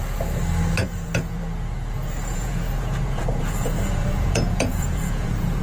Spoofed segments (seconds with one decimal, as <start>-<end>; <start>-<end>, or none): 0.8-1.4; 2.3-5.6